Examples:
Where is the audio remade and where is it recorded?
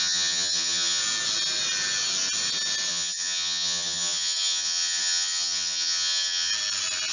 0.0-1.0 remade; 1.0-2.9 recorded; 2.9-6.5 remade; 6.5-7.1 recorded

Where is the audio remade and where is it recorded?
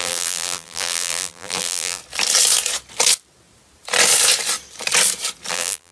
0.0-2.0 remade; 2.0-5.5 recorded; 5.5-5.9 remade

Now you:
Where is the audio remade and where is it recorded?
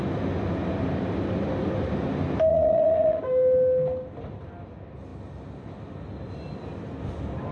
0.0-2.5 recorded; 2.5-3.2 remade; 3.2-7.5 recorded